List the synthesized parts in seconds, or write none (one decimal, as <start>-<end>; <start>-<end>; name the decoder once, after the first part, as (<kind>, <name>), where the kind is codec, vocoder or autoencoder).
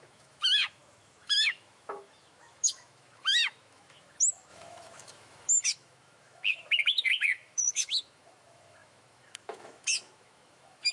0.0-10.9 (autoencoder, DAC-VAE)